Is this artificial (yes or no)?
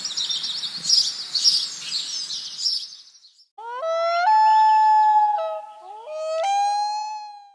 no